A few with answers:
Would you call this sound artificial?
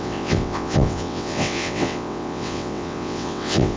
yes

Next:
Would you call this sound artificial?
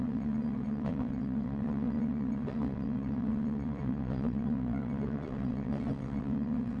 yes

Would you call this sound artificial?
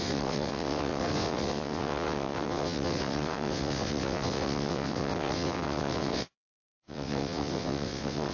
yes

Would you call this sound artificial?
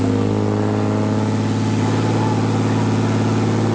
no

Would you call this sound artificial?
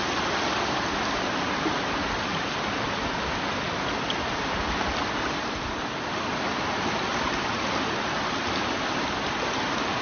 no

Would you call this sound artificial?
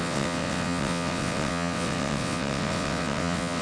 yes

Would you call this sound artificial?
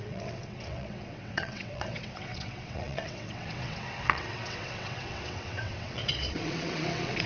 yes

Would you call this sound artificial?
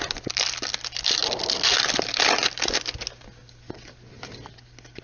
no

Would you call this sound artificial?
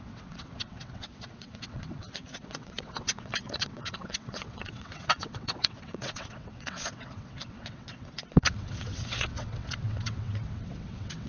yes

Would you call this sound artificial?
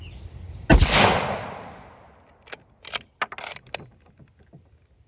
no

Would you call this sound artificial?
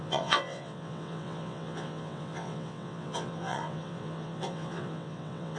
yes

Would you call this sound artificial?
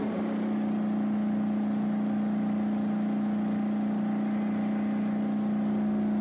no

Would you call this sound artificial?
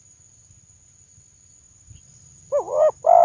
no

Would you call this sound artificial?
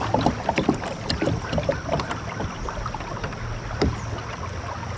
no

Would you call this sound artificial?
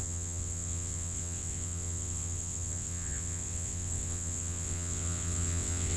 yes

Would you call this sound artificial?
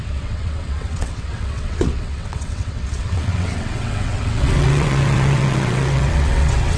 yes